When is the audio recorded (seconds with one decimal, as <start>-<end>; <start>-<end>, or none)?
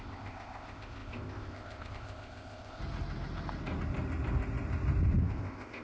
2.8-5.2